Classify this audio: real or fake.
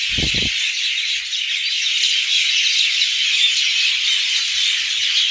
real